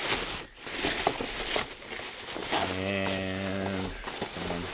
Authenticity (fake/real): real